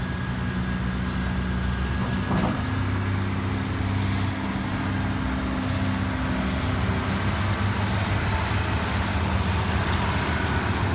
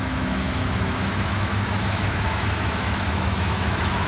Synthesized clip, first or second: second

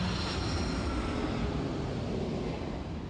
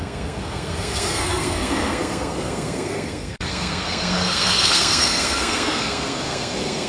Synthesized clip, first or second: second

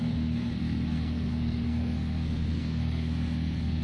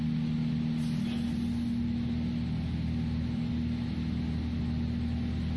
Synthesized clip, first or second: first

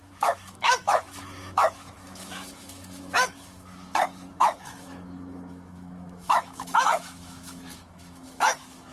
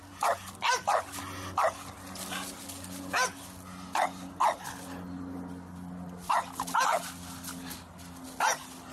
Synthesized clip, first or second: first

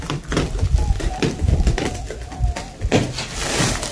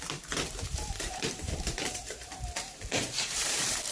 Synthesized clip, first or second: second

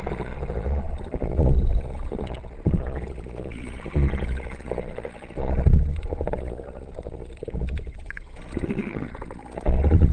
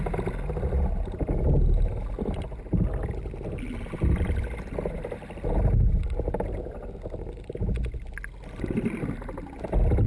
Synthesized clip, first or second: first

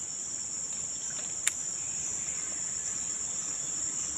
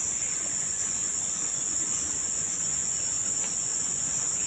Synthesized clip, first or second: second